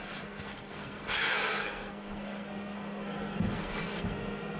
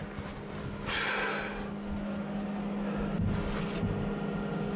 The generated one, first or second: first